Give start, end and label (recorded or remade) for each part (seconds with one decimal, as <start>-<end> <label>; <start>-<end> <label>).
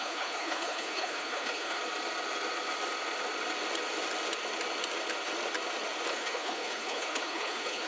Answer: 0.0-1.8 remade; 1.8-6.1 recorded; 6.1-7.9 remade